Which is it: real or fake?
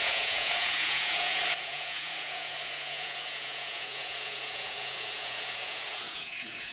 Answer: fake